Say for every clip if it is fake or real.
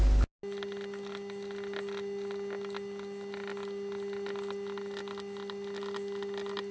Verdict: real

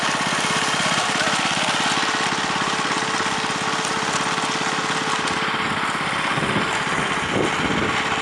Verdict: real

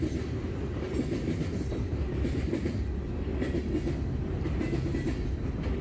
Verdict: real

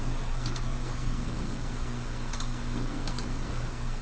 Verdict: fake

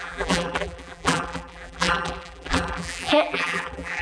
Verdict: fake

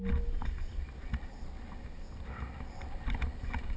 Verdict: real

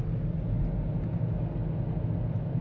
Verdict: real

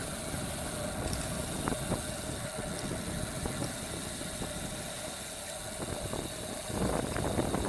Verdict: real